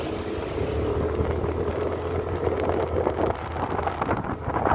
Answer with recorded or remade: recorded